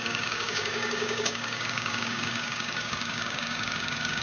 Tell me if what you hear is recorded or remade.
remade